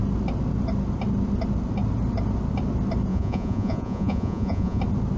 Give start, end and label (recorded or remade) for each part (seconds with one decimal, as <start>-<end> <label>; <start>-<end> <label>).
0.0-3.1 recorded; 3.1-4.8 remade; 4.8-5.2 recorded